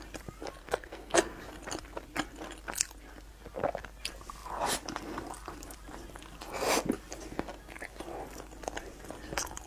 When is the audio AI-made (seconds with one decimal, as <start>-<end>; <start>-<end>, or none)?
0.6-1.3